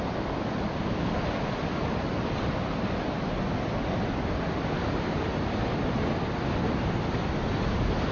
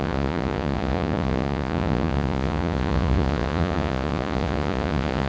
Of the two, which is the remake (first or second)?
second